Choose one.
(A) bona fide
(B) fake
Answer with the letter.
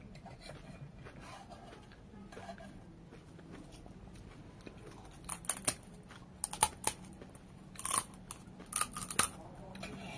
A